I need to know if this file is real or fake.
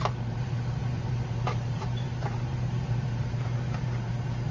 fake